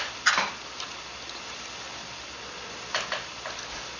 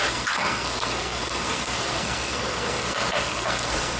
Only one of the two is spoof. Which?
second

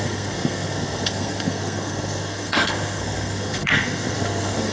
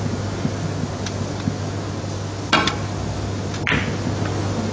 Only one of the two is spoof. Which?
first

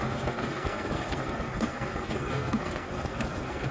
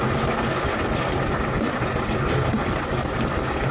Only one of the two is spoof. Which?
first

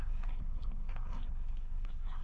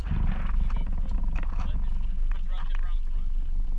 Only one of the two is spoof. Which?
first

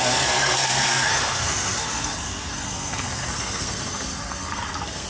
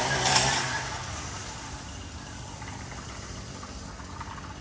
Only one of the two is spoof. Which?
first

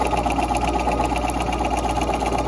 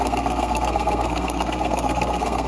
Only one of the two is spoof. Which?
second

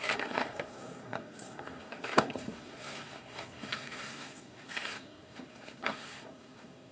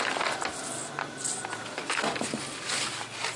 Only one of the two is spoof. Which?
first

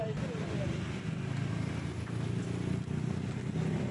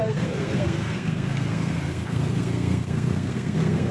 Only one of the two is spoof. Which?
second